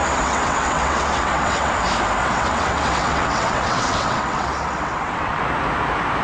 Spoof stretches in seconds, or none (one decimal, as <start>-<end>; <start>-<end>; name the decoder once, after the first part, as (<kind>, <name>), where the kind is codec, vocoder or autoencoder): 0.0-1.7 (vocoder, WaveNeXt); 2.2-5.4